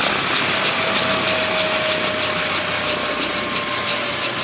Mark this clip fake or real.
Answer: real